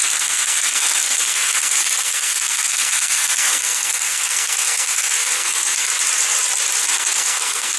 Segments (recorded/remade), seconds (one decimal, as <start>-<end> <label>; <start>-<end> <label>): 0.0-5.9 remade; 5.9-6.8 recorded; 6.8-7.8 remade